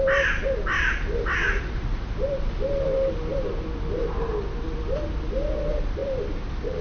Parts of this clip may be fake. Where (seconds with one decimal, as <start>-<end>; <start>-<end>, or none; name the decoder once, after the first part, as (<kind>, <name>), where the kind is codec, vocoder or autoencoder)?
none